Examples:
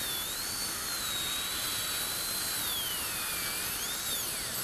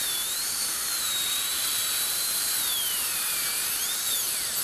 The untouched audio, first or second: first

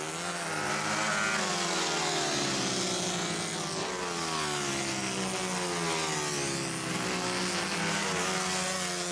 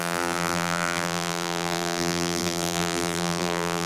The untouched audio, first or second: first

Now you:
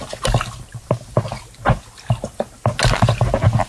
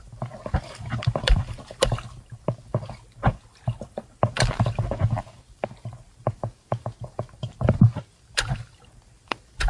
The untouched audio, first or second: first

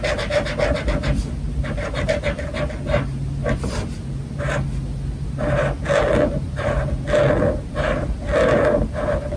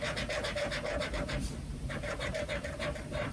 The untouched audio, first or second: first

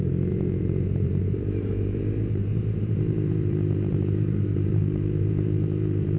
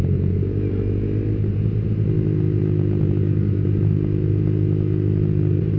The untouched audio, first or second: second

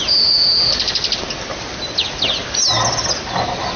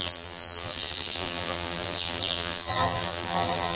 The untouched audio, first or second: first